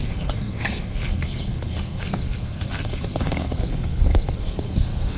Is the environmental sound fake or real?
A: fake